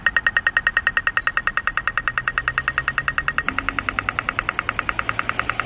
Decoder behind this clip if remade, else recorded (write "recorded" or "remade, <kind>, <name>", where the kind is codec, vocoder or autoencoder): recorded